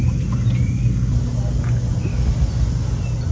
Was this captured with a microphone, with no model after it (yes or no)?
yes